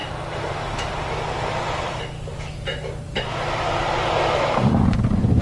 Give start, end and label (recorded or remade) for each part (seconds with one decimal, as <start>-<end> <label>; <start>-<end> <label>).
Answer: 0.0-3.2 remade; 3.2-5.4 recorded